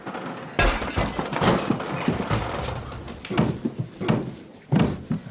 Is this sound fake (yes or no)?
no